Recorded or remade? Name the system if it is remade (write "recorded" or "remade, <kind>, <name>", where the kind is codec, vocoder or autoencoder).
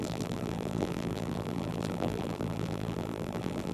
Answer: remade, vocoder, BigVGAN v2